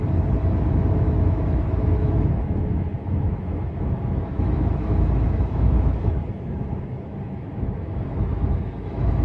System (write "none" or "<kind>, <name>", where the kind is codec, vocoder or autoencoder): autoencoder, DAC-VAE